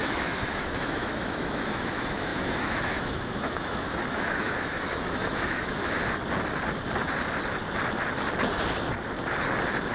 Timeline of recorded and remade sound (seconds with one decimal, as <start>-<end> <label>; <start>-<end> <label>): 0.0-6.0 remade; 6.0-9.9 recorded